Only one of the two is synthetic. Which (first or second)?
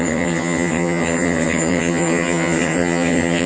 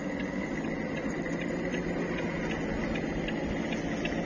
first